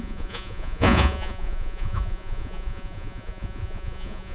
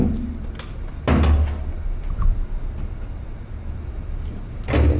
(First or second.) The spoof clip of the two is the first